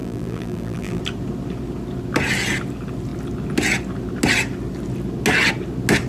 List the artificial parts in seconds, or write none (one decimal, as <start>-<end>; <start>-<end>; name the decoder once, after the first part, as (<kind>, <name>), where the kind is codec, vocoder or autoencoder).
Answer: 0.0-1.0 (vocoder, BigVGAN v2)